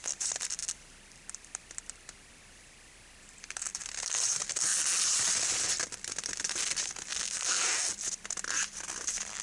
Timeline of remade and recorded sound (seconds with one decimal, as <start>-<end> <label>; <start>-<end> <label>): 0.0-4.7 remade; 4.7-6.2 recorded; 6.2-7.1 remade; 7.1-8.9 recorded; 8.9-9.4 remade